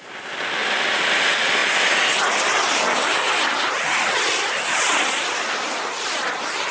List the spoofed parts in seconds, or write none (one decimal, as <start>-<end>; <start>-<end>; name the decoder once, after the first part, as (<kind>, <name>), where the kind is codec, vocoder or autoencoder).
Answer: none